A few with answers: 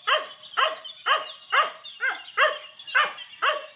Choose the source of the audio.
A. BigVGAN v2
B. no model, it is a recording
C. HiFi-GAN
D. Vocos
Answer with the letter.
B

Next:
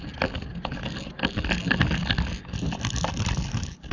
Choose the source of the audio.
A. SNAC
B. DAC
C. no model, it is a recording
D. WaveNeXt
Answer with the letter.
C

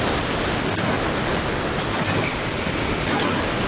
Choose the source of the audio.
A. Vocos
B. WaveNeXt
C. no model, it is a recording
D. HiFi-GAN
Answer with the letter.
C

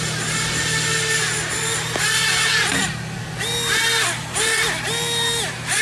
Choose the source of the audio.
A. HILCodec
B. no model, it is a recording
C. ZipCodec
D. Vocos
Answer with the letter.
B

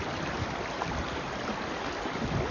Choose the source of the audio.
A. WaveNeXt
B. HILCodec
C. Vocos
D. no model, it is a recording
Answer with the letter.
D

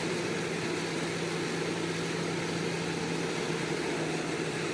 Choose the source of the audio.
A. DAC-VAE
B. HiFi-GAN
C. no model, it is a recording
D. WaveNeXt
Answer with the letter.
C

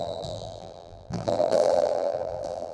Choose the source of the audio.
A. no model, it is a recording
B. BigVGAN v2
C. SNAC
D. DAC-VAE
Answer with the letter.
B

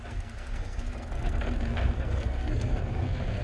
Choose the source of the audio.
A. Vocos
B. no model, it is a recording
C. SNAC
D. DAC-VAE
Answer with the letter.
C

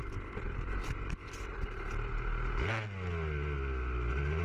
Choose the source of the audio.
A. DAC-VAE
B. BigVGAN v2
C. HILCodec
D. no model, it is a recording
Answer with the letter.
D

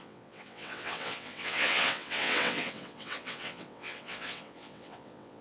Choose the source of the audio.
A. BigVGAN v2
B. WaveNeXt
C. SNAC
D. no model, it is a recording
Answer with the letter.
B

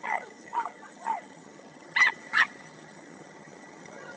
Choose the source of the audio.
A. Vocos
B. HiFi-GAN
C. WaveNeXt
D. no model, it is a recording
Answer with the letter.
B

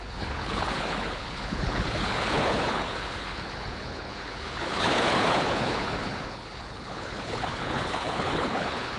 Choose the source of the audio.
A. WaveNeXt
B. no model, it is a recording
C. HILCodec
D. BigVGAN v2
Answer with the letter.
C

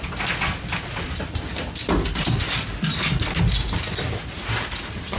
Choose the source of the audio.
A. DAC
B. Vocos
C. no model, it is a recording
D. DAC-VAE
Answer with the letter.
C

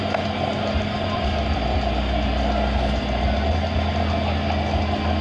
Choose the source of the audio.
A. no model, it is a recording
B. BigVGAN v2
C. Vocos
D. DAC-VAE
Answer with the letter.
A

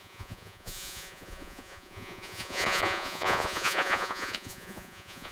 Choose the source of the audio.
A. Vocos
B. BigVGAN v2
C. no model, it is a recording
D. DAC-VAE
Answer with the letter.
A